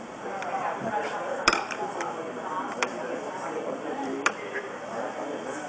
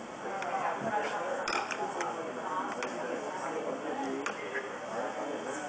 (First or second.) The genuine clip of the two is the second